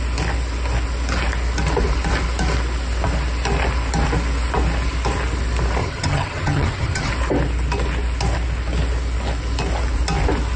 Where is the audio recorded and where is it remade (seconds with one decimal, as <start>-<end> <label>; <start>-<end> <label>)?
0.0-5.8 recorded; 5.8-7.1 remade; 7.1-10.6 recorded